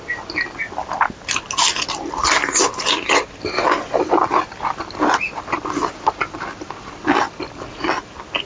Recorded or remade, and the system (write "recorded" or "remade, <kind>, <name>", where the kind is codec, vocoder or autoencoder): recorded